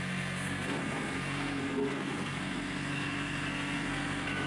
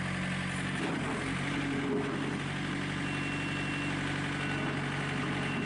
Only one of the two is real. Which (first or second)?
second